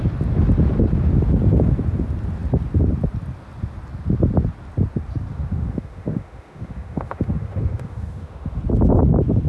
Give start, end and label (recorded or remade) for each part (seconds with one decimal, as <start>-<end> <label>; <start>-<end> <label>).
0.0-5.3 recorded; 5.3-8.6 remade; 8.6-9.5 recorded